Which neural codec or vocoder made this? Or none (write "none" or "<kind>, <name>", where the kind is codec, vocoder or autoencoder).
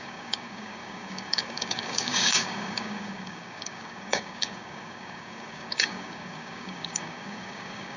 codec, DAC